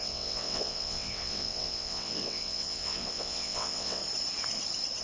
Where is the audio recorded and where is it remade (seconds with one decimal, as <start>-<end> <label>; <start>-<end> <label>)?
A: 0.0-4.0 remade; 4.0-5.0 recorded